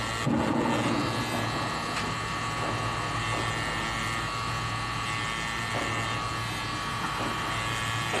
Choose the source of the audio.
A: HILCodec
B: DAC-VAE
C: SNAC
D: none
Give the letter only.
D